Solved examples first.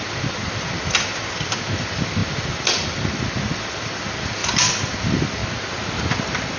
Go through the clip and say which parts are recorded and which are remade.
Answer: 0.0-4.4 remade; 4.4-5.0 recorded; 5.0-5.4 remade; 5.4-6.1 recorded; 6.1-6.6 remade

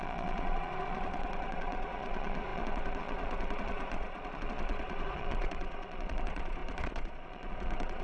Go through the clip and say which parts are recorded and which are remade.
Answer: 0.0-8.0 remade

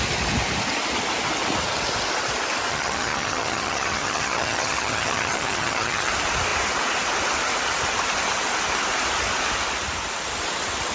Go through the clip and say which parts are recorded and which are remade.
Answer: 0.0-2.7 recorded; 2.7-6.1 remade; 6.1-10.9 recorded

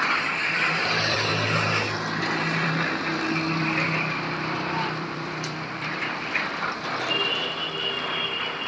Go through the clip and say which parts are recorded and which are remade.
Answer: 0.0-1.3 remade; 1.3-2.2 recorded; 2.2-8.7 remade